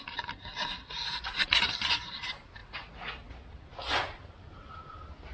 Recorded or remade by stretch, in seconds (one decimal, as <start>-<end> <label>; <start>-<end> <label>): 0.0-2.6 recorded; 2.6-3.3 remade; 3.3-5.3 recorded